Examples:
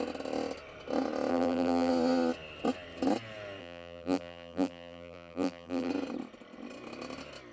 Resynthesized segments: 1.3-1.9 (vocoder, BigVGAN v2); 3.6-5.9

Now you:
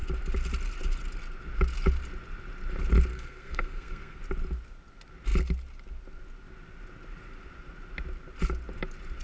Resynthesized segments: 3.1-4.2 (codec, SNAC)